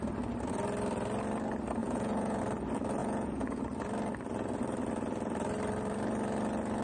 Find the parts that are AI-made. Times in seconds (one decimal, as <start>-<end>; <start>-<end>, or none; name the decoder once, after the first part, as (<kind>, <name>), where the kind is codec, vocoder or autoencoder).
1.8-2.4 (vocoder, Vocos); 3.0-3.6